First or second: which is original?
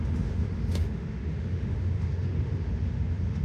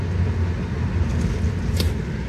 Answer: second